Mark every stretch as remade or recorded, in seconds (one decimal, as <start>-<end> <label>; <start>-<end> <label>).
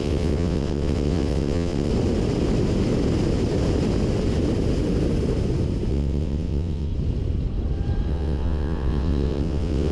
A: 0.0-1.9 remade; 1.9-5.9 recorded; 5.9-6.9 remade; 6.9-8.1 recorded; 8.1-9.9 remade